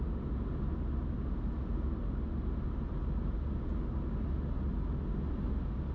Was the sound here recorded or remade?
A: recorded